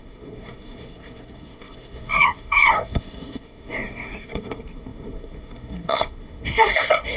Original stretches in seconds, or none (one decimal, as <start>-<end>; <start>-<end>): none